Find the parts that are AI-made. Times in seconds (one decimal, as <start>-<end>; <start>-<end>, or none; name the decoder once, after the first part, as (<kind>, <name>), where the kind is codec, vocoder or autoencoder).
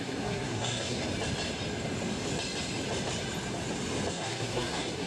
0.0-1.0 (codec, SNAC); 4.1-5.1